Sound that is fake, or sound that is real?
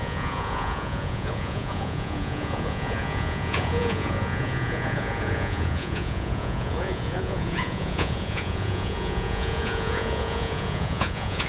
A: fake